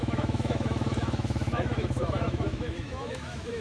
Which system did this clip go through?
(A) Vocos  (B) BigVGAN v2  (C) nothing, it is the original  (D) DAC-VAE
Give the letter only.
D